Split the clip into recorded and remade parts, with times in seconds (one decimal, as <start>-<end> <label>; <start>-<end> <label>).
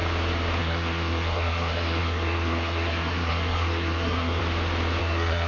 0.0-0.6 recorded; 0.6-4.4 remade; 4.4-5.0 recorded; 5.0-5.5 remade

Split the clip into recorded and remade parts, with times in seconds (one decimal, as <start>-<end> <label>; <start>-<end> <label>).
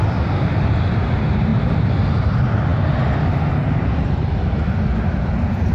0.0-5.7 recorded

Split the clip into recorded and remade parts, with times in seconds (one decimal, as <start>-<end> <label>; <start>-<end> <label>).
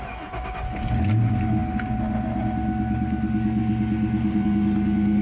0.0-1.6 recorded; 1.6-2.4 remade; 2.4-5.2 recorded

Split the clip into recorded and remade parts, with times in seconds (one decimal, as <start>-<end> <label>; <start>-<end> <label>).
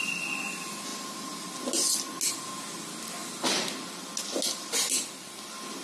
0.0-5.8 recorded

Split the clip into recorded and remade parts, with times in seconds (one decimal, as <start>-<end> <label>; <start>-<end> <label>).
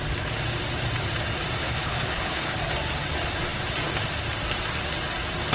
0.0-1.6 recorded; 1.6-2.6 remade; 2.6-5.5 recorded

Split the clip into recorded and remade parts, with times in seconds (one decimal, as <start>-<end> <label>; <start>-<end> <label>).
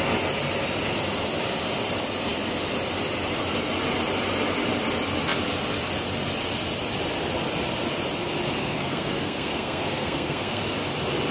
0.0-8.6 recorded; 8.6-10.6 remade; 10.6-11.3 recorded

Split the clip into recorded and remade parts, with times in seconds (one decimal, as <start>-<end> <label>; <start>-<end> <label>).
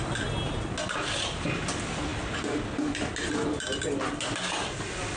0.0-5.2 recorded